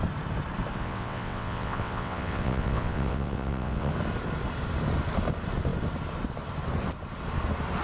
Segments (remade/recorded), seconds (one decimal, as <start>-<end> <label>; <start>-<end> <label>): 0.0-0.7 recorded; 0.7-3.9 remade; 3.9-7.8 recorded